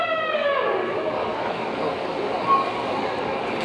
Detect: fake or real fake